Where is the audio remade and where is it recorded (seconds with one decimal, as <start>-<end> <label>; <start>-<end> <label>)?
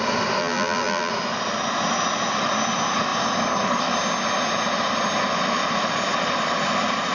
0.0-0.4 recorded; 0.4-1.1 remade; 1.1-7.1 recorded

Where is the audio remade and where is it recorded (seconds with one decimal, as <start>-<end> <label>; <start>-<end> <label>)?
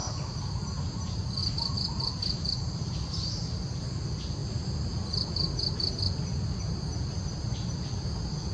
0.0-0.5 remade; 0.5-1.4 recorded; 1.4-3.6 remade; 3.6-8.5 recorded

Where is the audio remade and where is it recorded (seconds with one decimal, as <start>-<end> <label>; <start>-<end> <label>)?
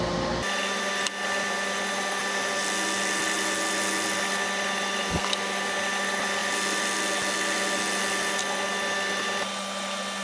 0.0-10.2 recorded